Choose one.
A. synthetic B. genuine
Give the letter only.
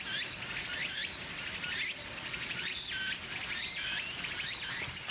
B